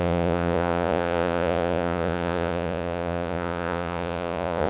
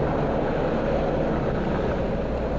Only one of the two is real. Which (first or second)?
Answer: second